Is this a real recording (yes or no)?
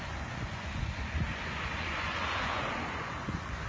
no